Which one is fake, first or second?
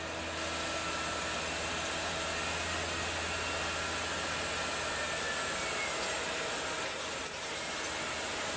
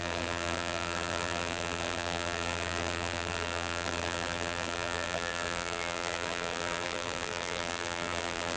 second